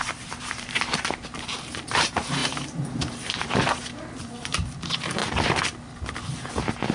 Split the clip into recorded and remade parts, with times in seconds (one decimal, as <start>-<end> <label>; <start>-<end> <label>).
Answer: 0.0-5.2 remade; 5.2-6.5 recorded; 6.5-6.9 remade

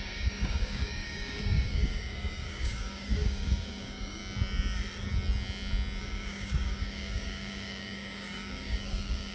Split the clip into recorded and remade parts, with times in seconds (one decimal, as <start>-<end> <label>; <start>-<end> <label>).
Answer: 0.0-4.2 remade; 4.2-6.0 recorded; 6.0-9.3 remade

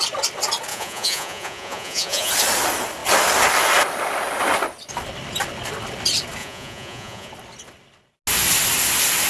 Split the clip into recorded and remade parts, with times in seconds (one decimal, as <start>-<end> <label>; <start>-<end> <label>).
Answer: 0.0-0.7 recorded; 0.7-2.3 remade; 2.3-6.4 recorded; 6.4-7.3 remade; 7.3-9.3 recorded

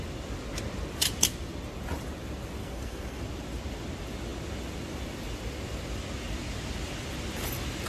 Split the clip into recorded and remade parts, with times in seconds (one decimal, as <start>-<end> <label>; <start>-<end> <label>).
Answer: 0.0-2.6 recorded; 2.6-3.2 remade; 3.2-7.9 recorded

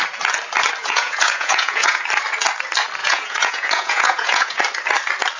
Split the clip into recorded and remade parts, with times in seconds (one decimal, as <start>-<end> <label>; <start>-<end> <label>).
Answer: 0.0-0.8 recorded; 0.8-2.0 remade; 2.0-3.0 recorded; 3.0-4.6 remade; 4.6-5.4 recorded

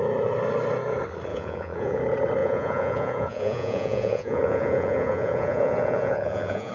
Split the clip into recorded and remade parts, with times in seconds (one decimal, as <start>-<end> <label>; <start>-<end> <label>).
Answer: 0.0-1.3 recorded; 1.3-2.0 remade; 2.0-2.4 recorded; 2.4-6.7 remade

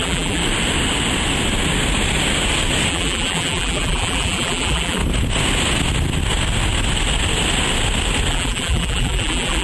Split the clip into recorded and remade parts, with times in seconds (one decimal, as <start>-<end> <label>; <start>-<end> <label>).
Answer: 0.0-0.4 remade; 0.4-2.9 recorded; 2.9-5.0 remade; 5.0-8.3 recorded; 8.3-9.6 remade

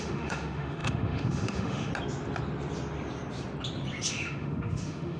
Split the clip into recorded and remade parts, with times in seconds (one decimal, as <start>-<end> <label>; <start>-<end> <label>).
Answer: 0.0-1.9 remade; 1.9-4.1 recorded; 4.1-5.2 remade